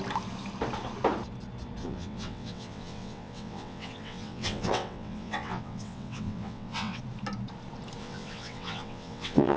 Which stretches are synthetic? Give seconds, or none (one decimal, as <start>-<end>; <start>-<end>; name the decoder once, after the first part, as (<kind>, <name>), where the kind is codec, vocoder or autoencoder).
1.8-7.0 (vocoder, WaveNeXt); 8.0-9.6